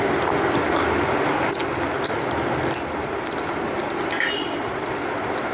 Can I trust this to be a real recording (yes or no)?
yes